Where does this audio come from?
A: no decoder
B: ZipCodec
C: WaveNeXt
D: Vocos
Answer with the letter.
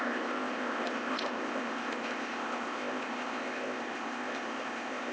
B